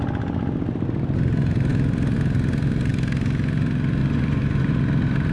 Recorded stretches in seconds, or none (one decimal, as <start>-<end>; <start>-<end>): 0.0-4.0; 4.7-5.3